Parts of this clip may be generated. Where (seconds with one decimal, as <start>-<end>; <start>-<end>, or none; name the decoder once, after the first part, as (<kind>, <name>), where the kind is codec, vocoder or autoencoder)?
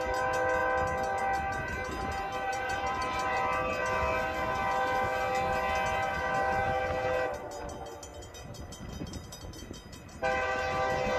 2.5-3.7 (vocoder, BigVGAN v2); 8.1-10.1